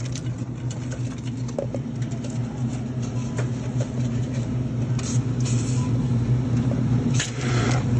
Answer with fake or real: real